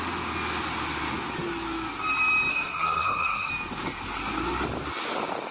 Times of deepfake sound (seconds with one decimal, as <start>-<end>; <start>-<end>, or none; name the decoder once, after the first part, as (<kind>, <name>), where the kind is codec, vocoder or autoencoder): 2.5-3.5 (codec, SNAC)